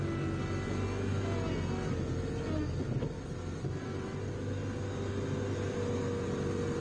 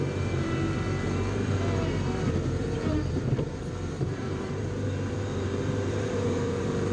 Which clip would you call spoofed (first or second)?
second